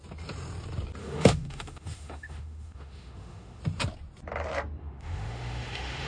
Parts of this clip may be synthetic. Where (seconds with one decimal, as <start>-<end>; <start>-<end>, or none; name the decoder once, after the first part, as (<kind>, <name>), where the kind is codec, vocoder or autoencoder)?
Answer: 1.0-3.6 (autoencoder, DAC-VAE); 4.8-6.1